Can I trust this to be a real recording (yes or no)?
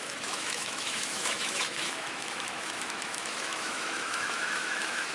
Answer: no